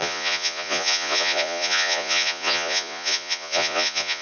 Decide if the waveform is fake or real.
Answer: fake